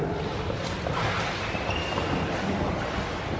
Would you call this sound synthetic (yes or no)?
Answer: no